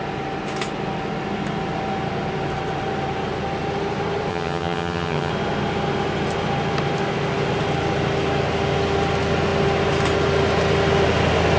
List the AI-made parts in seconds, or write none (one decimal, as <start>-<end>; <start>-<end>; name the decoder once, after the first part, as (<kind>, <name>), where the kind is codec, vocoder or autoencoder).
4.3-5.3 (vocoder, HiFi-GAN)